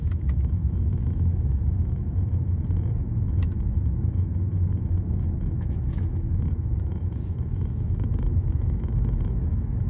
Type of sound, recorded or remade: remade